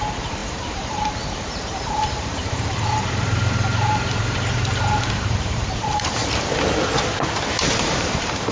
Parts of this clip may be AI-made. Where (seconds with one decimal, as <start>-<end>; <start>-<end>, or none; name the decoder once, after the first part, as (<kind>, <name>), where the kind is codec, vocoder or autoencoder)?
0.0-6.2 (vocoder, BigVGAN v2); 7.6-8.5